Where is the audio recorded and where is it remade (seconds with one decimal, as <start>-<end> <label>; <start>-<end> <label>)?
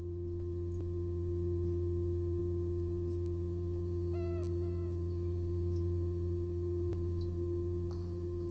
0.0-8.5 recorded